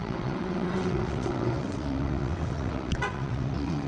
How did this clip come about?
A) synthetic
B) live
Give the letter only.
A